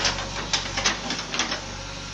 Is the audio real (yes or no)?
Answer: yes